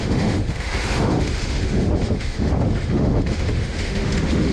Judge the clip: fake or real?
fake